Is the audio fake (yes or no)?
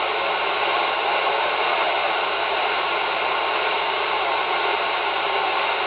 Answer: no